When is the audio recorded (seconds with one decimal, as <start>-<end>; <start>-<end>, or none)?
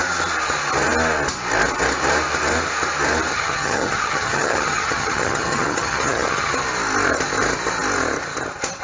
0.0-3.3; 6.5-8.8